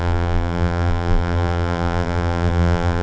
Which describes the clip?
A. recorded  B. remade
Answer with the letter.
B